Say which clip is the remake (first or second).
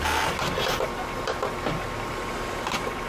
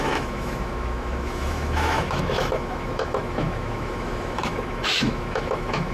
second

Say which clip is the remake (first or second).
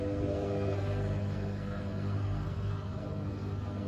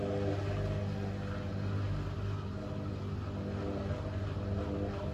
first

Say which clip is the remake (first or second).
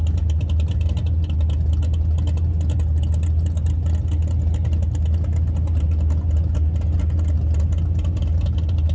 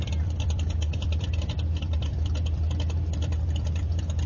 second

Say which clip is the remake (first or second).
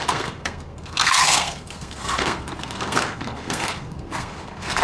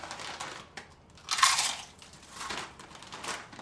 first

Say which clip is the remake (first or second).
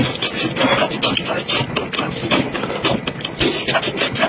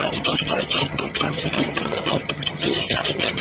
second